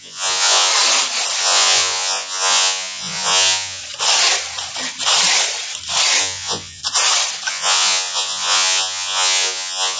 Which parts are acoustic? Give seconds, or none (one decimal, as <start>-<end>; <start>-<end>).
0.7-1.4; 3.8-6.2; 6.8-7.5